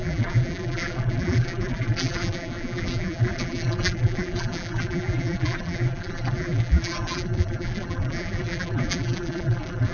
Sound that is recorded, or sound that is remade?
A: remade